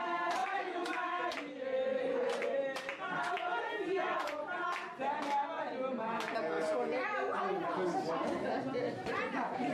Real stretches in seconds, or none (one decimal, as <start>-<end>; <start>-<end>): 0.0-0.4; 1.2-9.7